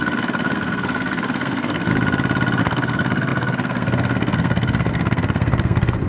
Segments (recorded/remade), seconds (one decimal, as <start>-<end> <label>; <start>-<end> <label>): 0.0-1.9 remade; 1.9-2.6 recorded; 2.6-6.1 remade